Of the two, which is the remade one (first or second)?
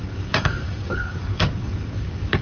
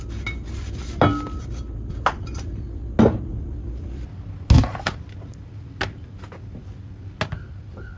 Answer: first